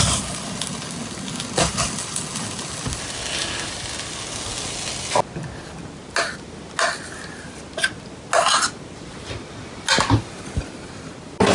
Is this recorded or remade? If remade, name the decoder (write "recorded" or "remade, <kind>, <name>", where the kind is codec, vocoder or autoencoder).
recorded